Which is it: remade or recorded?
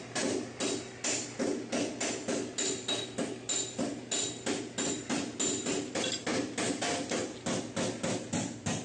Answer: recorded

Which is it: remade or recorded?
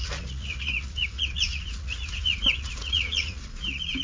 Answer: remade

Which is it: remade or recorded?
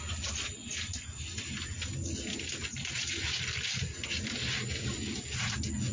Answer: recorded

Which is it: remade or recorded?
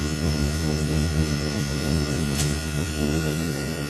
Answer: remade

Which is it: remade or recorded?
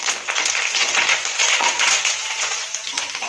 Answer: remade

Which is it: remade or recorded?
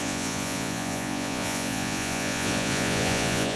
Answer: remade